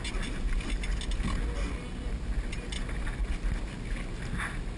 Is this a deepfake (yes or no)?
no